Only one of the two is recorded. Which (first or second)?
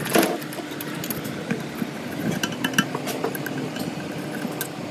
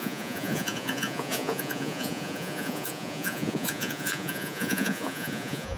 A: first